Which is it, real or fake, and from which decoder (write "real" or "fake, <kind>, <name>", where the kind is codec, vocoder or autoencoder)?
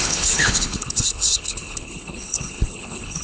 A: fake, codec, HILCodec